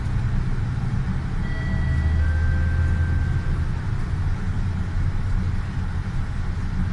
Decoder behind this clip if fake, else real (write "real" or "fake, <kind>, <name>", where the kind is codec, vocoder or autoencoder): real